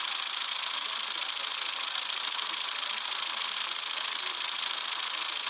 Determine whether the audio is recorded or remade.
recorded